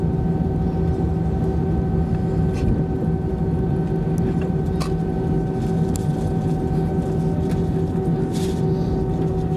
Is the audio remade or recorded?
recorded